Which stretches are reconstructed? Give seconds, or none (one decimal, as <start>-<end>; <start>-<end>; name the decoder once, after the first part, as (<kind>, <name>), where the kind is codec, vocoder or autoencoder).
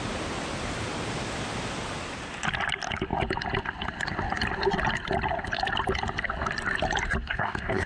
7.2-7.9 (codec, DAC)